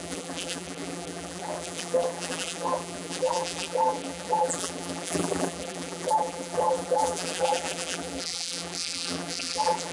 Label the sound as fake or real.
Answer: fake